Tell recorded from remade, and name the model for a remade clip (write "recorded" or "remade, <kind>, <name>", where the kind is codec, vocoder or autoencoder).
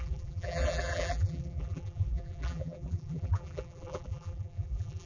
remade, vocoder, BigVGAN v2